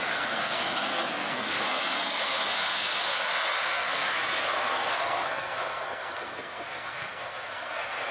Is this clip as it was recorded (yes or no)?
no